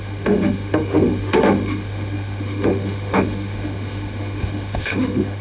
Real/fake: fake